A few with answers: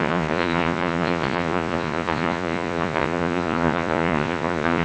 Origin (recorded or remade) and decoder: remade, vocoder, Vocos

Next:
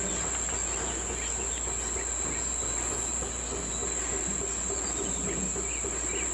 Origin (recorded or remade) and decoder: recorded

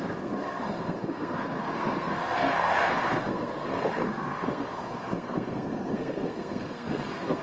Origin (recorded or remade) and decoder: remade, codec, SNAC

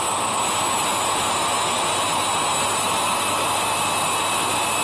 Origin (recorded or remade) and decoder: recorded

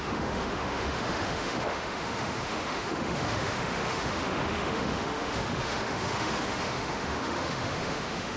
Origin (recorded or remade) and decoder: remade, autoencoder, DAC-VAE